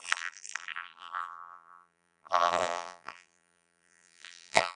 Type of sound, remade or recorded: remade